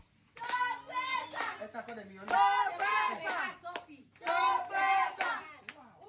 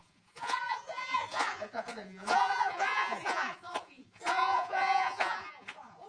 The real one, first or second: first